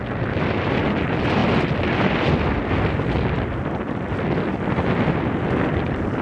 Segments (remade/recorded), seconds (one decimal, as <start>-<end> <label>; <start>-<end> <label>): 0.0-6.2 recorded